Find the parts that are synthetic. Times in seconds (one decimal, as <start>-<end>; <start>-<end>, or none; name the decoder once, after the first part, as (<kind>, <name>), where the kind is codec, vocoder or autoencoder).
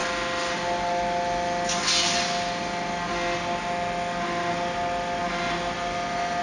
none